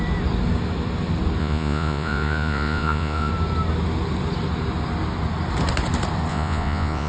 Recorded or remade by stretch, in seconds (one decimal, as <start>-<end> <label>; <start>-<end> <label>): 0.0-1.4 recorded; 1.4-3.3 remade; 3.3-6.3 recorded; 6.3-7.1 remade